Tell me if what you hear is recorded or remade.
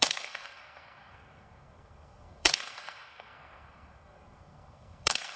remade